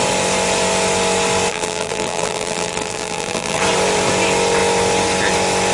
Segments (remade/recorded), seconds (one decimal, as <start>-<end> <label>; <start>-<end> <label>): 0.0-1.5 recorded; 1.5-3.6 remade; 3.6-5.7 recorded

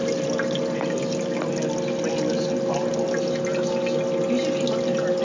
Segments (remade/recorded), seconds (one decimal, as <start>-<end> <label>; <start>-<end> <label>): 0.0-5.2 recorded

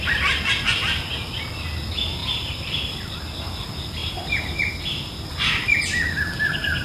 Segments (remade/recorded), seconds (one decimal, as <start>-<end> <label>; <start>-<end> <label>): 0.0-4.0 recorded; 4.0-4.7 remade; 4.7-6.8 recorded

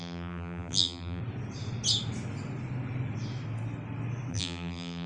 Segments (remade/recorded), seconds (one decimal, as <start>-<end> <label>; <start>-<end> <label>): 0.0-1.2 remade; 1.2-4.3 recorded; 4.3-5.1 remade

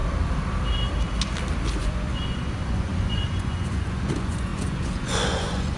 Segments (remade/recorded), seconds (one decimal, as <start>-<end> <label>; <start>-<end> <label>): 0.0-1.8 recorded; 1.8-5.8 remade

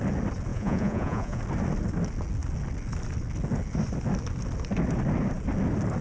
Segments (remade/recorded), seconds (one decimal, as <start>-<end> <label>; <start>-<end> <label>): 0.0-0.5 recorded; 0.5-1.4 remade; 1.4-6.0 recorded

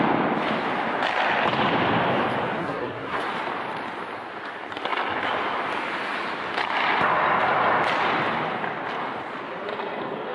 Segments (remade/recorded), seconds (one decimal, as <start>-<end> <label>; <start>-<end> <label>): 0.0-2.6 recorded; 2.6-3.2 remade; 3.2-10.3 recorded